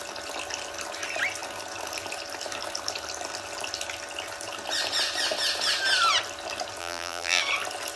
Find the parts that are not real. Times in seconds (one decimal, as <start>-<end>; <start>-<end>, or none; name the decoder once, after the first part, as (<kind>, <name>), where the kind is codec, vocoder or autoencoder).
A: 6.8-7.4 (vocoder, BigVGAN v2)